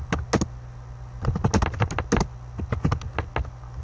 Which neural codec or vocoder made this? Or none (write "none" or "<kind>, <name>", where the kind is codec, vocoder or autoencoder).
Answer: none